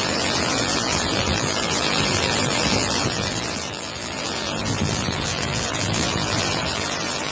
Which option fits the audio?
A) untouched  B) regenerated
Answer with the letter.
B